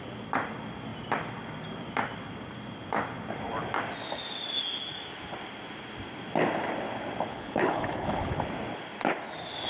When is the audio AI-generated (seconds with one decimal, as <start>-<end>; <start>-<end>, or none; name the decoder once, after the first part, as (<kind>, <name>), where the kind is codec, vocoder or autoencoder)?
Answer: 7.3-8.4 (codec, HILCodec)